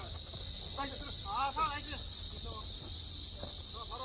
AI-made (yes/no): no